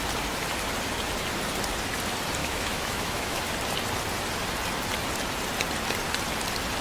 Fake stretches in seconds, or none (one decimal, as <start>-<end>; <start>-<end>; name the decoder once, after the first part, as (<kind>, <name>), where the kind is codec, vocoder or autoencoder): 2.4-3.4 (autoencoder, DAC-VAE)